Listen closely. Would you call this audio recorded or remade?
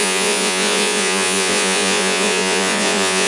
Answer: remade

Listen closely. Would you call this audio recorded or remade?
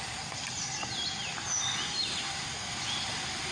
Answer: recorded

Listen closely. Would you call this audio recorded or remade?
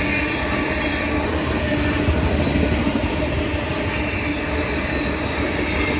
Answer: recorded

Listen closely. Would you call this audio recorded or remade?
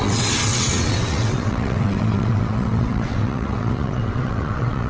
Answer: remade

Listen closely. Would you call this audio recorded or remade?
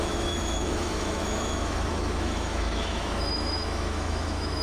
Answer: remade